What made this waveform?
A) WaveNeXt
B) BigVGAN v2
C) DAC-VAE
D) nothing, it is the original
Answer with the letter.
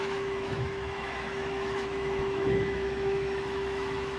C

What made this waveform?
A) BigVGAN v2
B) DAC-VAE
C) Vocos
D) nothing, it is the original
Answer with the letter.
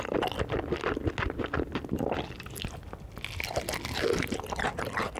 D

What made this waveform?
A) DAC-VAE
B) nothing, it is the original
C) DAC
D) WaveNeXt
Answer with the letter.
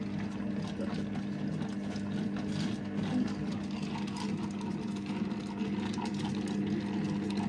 B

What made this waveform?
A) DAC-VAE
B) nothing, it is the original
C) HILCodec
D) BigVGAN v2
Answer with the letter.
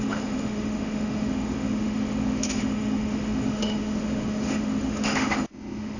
A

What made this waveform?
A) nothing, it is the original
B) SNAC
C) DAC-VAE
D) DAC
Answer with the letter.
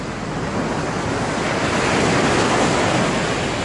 A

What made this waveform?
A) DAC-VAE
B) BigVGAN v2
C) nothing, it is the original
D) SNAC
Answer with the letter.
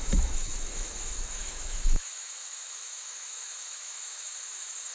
A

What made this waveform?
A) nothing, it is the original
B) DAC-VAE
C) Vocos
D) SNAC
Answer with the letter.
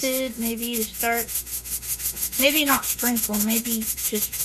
B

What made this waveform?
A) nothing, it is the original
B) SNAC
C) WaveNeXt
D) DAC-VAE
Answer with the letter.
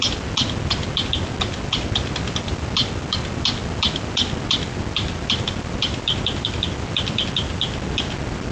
A